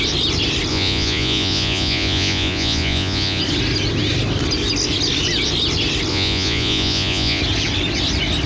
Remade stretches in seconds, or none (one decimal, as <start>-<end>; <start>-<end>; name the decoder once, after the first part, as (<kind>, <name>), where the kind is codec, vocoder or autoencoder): 0.7-3.4 (vocoder, Vocos); 6.1-7.4